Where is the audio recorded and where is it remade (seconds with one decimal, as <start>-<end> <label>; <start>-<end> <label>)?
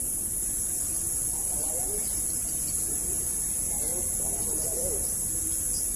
0.0-6.0 recorded